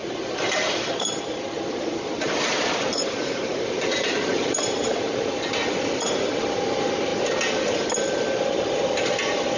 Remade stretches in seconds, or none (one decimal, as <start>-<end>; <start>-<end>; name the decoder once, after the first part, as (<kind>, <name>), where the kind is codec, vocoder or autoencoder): 0.0-5.3 (vocoder, BigVGAN v2)